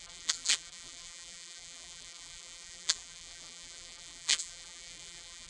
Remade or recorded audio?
remade